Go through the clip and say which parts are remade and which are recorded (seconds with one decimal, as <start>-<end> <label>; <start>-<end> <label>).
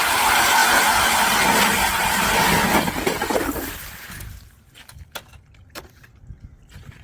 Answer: 0.0-7.0 recorded